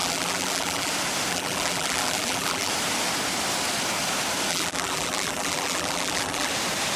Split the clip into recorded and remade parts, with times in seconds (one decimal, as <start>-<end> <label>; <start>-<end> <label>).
0.0-0.9 remade; 0.9-1.3 recorded; 1.3-2.7 remade; 2.7-4.5 recorded; 4.5-6.5 remade; 6.5-7.0 recorded